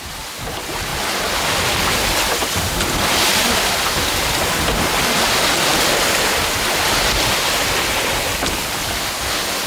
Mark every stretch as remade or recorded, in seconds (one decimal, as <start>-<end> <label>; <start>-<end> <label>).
0.0-9.7 recorded